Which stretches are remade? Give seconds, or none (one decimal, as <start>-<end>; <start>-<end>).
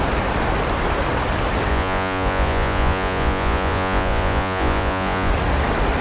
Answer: 1.7-5.3